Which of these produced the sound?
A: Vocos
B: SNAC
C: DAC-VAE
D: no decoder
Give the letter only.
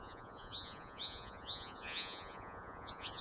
A